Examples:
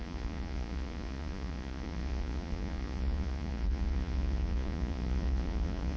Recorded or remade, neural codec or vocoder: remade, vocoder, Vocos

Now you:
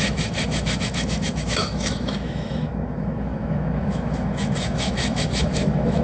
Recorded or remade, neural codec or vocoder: remade, autoencoder, DAC-VAE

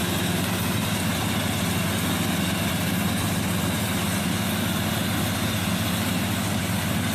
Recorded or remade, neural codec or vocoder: recorded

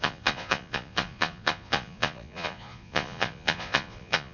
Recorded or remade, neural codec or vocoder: remade, vocoder, Vocos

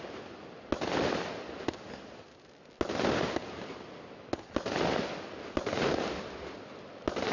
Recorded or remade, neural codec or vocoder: recorded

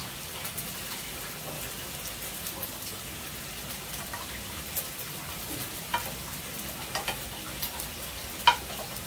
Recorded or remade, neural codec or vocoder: recorded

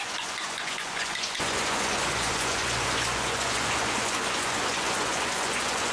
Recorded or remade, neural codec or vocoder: remade, vocoder, Vocos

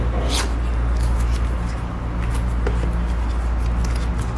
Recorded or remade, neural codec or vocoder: recorded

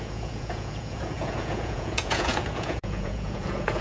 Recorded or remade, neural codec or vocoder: remade, vocoder, Vocos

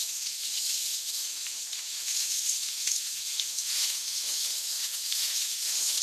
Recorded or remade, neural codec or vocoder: remade, autoencoder, DAC-VAE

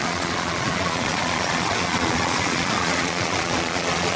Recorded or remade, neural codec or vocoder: remade, vocoder, Vocos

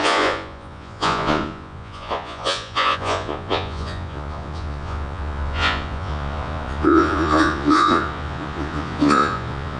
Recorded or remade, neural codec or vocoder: remade, vocoder, Vocos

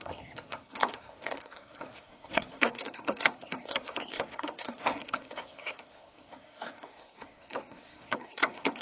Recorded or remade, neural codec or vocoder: remade, codec, SNAC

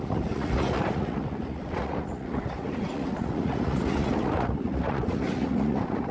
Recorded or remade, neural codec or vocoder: remade, vocoder, Vocos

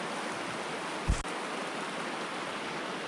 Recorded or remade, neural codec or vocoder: recorded